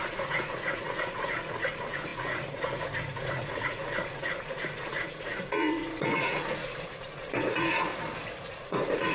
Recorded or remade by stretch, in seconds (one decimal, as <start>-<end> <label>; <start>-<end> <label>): 0.0-7.9 remade; 7.9-8.6 recorded; 8.6-9.1 remade